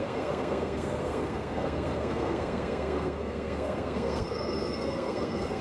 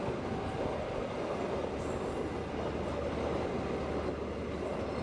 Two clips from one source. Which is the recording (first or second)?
second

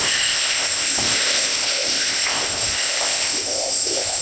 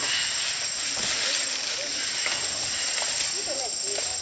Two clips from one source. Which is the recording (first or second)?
second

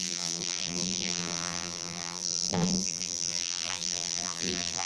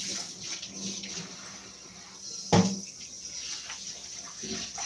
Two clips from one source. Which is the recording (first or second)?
second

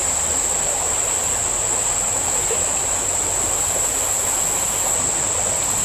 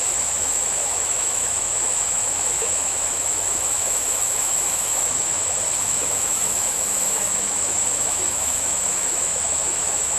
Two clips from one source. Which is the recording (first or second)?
first